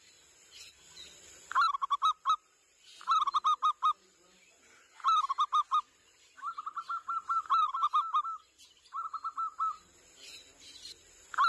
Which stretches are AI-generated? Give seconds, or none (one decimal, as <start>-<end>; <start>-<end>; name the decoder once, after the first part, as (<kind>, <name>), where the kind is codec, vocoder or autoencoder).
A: none